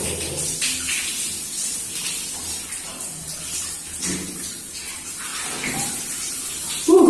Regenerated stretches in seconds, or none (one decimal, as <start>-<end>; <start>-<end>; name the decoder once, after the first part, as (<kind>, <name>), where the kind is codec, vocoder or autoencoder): none